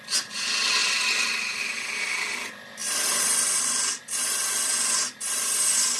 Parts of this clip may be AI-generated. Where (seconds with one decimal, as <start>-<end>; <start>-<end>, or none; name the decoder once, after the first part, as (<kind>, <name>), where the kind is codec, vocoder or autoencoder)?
2.8-6.0 (vocoder, BigVGAN v2)